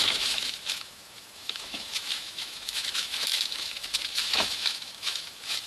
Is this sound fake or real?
fake